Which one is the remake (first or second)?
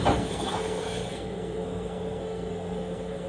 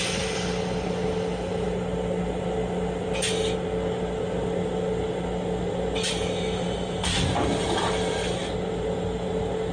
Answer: first